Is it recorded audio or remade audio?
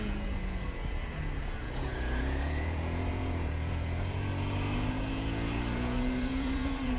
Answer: remade